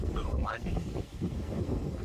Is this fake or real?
fake